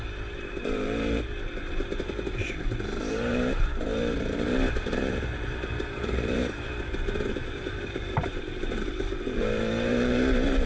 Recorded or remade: remade